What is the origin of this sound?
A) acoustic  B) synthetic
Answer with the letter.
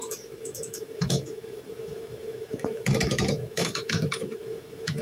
B